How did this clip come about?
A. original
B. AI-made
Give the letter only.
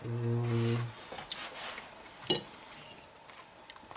A